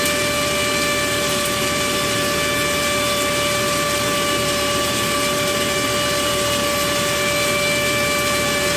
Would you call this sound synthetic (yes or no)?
no